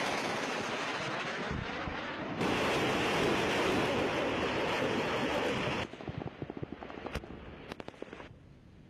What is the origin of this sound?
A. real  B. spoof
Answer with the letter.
A